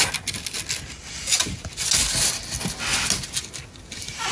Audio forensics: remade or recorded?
recorded